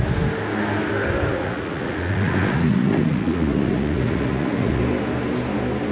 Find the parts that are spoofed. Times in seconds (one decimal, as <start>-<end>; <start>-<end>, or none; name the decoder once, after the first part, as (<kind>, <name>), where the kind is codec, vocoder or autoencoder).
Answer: 1.3-4.8 (vocoder, Vocos)